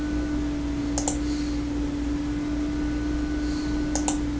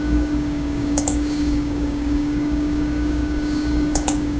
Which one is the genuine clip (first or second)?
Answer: first